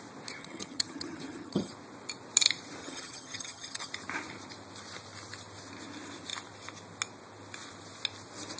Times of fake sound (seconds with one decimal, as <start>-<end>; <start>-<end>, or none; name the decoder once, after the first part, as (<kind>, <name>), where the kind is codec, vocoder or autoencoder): 0.4-1.7 (vocoder, HiFi-GAN); 2.8-3.9